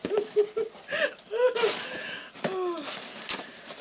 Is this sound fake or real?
real